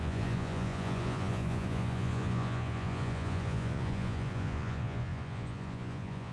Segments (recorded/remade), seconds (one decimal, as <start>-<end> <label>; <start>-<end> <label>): 0.0-6.3 remade